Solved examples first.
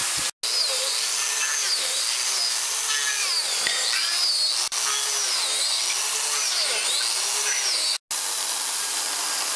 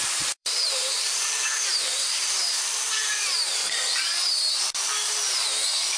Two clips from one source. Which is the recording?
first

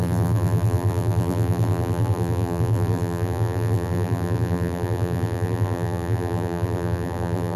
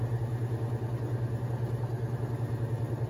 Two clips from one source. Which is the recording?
second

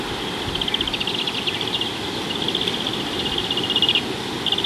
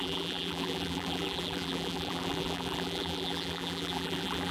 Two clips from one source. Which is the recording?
first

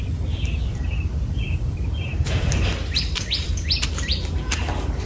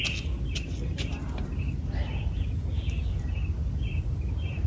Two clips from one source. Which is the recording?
second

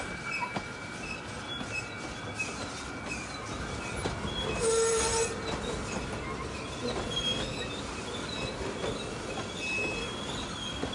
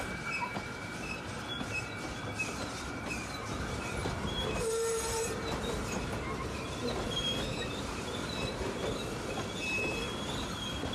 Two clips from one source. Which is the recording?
first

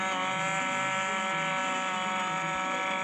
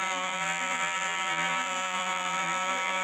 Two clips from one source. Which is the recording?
first